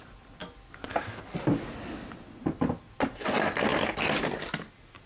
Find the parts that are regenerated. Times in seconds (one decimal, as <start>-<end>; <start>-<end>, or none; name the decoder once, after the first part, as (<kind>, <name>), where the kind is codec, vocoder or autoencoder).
none